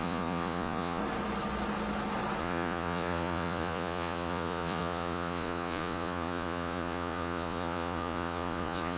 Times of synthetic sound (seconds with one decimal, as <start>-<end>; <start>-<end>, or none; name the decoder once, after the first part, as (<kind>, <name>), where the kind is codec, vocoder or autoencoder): 0.0-1.0 (vocoder, Vocos); 2.4-9.0